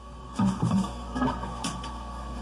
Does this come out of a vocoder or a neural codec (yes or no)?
yes